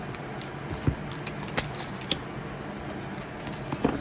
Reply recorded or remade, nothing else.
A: recorded